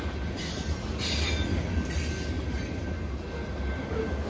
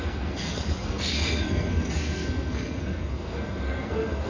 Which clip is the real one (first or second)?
first